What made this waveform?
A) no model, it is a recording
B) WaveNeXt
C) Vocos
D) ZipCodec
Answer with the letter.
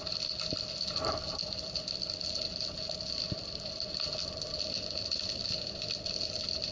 A